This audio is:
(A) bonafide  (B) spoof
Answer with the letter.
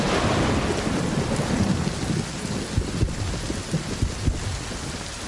A